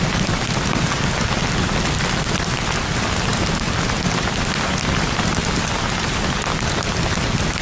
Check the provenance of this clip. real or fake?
real